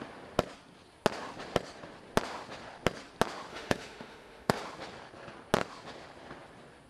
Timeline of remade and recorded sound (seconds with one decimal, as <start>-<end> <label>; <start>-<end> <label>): 0.0-3.5 recorded; 3.5-4.6 remade; 4.6-6.9 recorded